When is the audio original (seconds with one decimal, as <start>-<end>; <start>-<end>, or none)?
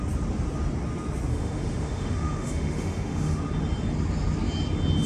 0.0-1.3; 3.4-5.1